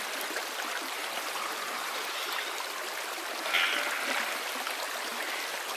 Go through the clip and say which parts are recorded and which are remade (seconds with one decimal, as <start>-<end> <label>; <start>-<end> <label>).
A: 0.0-0.8 recorded; 0.8-2.3 remade; 2.3-5.8 recorded